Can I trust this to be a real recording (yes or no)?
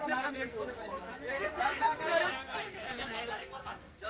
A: no